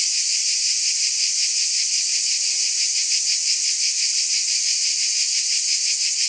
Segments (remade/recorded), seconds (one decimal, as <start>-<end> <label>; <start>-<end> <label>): 0.0-2.1 recorded; 2.1-3.1 remade; 3.1-5.2 recorded; 5.2-6.3 remade